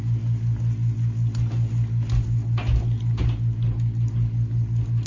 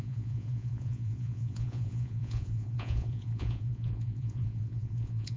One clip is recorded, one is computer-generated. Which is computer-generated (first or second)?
second